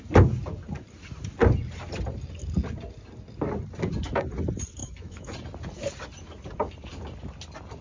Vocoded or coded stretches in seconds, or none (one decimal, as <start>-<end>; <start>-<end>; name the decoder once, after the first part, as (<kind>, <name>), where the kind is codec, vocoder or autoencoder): 4.8-5.3 (autoencoder, DAC-VAE)